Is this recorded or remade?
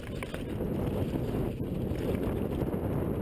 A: recorded